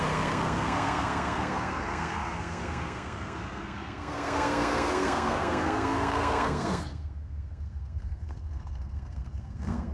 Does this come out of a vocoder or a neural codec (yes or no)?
yes